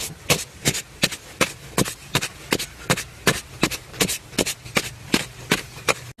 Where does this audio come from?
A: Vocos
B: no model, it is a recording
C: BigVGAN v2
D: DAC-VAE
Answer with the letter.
B